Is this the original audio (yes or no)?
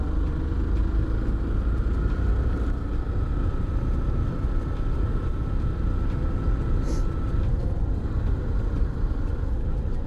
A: yes